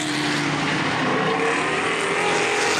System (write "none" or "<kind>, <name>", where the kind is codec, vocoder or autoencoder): none